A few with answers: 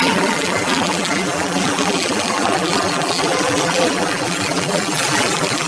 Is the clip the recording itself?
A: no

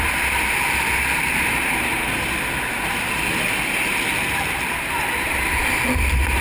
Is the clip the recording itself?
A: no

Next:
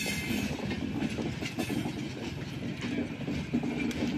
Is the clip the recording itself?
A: yes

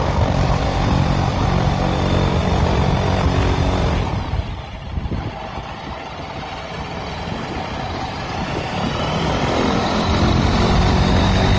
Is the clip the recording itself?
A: no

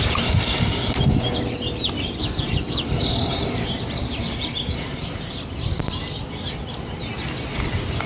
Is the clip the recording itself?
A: no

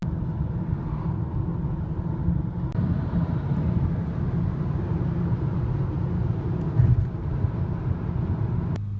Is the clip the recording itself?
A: yes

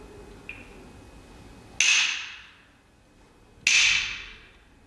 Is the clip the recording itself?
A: yes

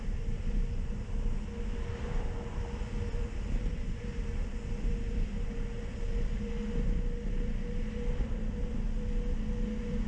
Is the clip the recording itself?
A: yes